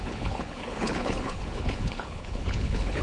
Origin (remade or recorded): remade